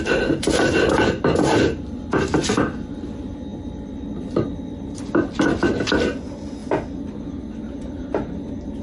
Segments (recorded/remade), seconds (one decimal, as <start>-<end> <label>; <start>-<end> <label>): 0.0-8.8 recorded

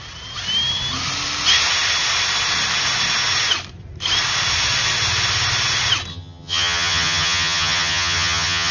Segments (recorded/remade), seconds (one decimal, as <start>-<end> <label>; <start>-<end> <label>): 0.0-6.1 recorded; 6.1-8.7 remade

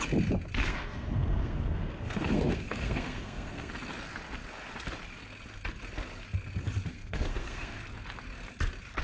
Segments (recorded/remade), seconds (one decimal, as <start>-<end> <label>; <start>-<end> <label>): 0.0-0.6 recorded; 0.6-3.7 remade; 3.7-6.9 recorded; 6.9-7.8 remade; 7.8-9.0 recorded